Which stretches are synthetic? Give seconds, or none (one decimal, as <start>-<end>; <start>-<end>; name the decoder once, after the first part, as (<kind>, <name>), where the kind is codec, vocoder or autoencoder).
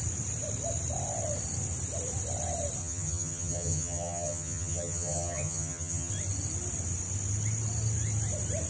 2.8-6.1 (vocoder, HiFi-GAN)